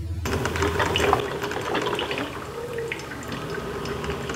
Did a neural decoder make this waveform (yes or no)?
no